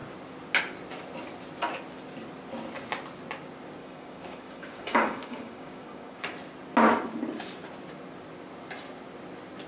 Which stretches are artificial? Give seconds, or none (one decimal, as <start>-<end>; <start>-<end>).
3.8-6.2